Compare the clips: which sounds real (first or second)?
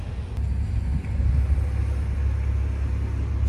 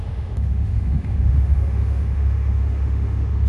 first